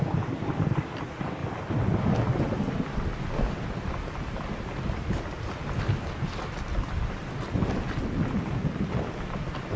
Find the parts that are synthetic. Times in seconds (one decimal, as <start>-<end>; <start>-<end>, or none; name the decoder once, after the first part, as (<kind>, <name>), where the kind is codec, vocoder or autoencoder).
none